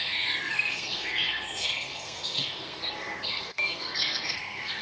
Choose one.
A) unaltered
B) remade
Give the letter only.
B